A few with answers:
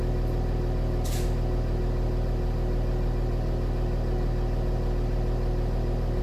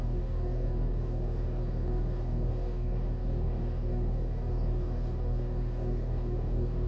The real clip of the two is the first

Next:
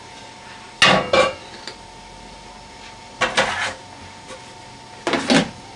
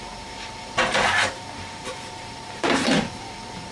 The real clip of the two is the first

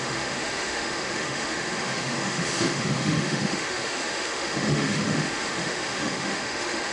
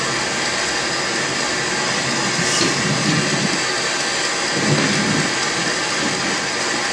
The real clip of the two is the second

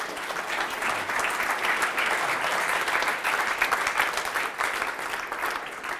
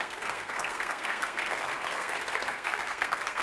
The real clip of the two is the first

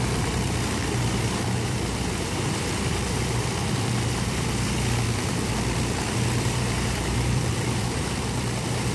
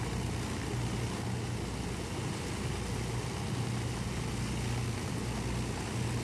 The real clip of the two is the second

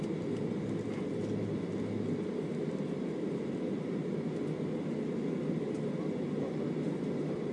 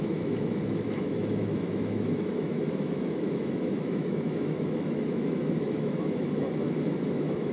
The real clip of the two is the first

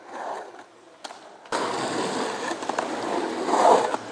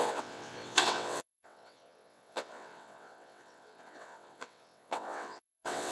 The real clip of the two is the first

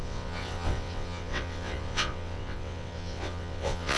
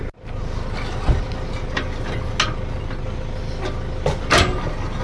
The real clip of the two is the second